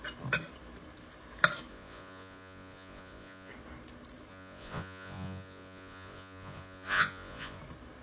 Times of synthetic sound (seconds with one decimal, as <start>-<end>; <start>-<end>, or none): 1.7-3.5; 4.3-7.6